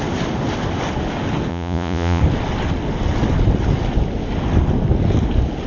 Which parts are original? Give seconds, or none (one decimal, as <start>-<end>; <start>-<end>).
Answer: 0.0-1.5; 2.2-5.7